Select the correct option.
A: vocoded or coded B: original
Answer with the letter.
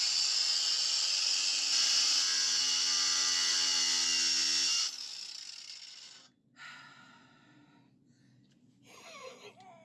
B